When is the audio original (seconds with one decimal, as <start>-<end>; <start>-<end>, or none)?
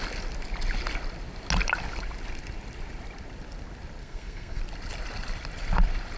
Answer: 0.0-4.0; 4.6-6.2